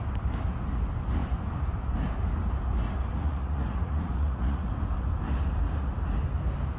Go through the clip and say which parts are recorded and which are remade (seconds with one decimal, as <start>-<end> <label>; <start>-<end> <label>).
0.0-3.1 recorded; 3.1-4.7 remade; 4.7-6.8 recorded